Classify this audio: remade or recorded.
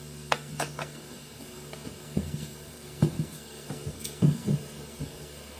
remade